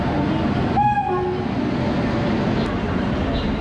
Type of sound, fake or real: real